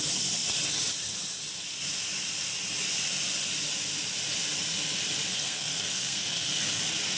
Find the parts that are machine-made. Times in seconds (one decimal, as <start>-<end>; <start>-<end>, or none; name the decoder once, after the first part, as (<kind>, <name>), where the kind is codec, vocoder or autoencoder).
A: 5.3-6.8 (codec, SNAC)